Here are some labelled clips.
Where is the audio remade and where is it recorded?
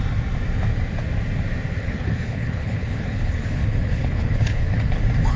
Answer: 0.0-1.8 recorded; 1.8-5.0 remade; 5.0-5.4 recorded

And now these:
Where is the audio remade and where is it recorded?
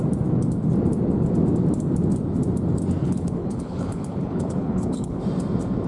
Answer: 0.0-3.0 recorded; 3.0-5.2 remade; 5.2-5.9 recorded